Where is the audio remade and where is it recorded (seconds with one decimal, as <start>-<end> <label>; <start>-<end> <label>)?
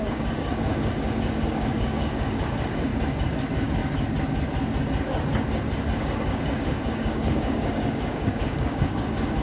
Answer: 0.0-2.9 remade; 2.9-3.4 recorded; 3.4-3.8 remade; 3.8-6.0 recorded; 6.0-9.4 remade